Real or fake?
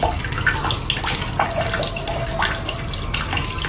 real